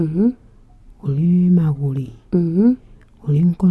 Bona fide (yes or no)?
yes